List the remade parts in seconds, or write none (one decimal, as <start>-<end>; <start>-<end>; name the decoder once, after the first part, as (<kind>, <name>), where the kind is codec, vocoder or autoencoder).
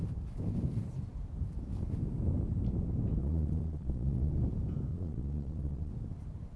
3.2-4.3 (vocoder, Vocos); 4.9-5.9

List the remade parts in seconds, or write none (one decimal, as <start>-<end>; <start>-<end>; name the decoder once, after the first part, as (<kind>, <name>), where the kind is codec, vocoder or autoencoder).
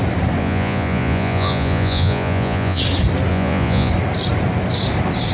0.4-2.8 (vocoder, Vocos); 3.3-3.9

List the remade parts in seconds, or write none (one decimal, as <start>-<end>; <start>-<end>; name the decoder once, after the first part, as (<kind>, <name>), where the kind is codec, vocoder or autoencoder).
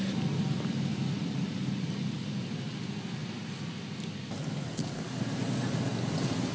none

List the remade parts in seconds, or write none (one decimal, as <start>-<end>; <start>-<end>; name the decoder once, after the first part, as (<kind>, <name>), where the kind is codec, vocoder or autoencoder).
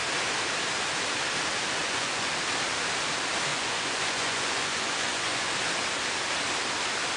1.8-2.3 (vocoder, Vocos); 3.5-5.5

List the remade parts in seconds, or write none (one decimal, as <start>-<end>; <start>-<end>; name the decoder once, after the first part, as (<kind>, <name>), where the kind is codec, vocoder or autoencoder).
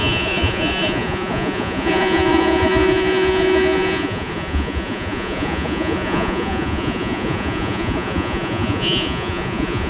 0.0-9.9 (vocoder, Vocos)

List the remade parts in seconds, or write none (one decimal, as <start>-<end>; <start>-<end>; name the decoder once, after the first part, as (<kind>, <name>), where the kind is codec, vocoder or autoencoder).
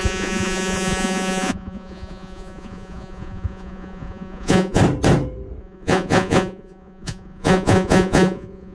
0.0-4.8 (vocoder, Vocos); 5.6-8.7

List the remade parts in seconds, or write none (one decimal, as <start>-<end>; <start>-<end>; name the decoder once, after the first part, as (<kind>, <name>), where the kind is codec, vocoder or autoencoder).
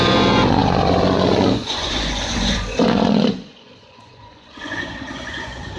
0.0-5.8 (vocoder, Vocos)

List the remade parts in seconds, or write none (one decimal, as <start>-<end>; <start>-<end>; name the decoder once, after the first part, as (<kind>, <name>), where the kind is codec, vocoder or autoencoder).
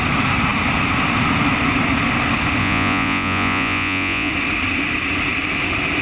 2.6-4.3 (vocoder, Vocos)